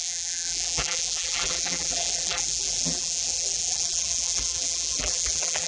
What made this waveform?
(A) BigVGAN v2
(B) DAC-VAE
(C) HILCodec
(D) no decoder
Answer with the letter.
A